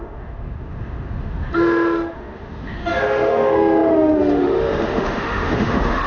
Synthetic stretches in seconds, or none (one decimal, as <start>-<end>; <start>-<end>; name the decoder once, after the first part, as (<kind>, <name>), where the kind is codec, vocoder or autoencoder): 0.0-6.1 (autoencoder, DAC-VAE)